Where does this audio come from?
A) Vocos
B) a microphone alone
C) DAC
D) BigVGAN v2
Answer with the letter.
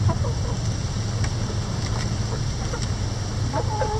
D